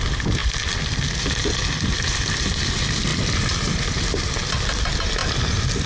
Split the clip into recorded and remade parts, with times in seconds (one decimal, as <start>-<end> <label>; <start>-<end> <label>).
0.0-5.9 recorded